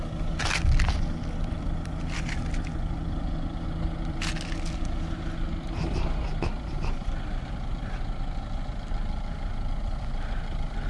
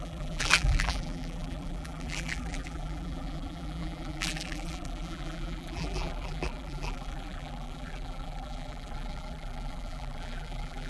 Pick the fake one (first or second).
second